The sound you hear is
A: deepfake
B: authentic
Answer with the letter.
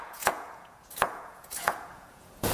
A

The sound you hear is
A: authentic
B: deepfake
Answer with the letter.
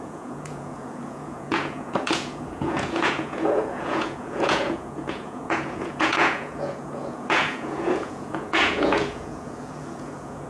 B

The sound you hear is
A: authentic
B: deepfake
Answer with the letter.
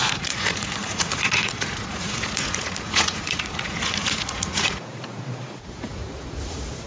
B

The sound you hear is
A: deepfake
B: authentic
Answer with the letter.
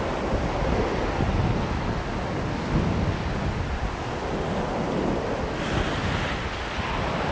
B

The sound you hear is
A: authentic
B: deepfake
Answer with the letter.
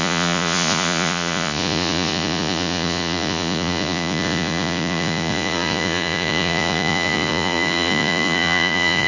B